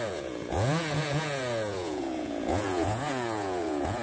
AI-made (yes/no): yes